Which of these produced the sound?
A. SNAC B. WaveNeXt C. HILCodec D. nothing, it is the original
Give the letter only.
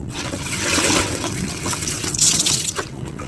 B